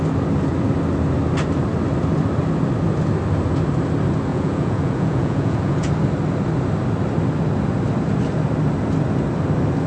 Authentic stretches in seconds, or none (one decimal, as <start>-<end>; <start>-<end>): 0.0-4.3; 5.9-9.9